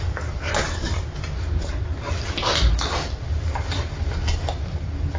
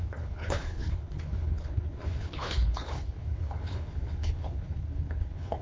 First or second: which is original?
first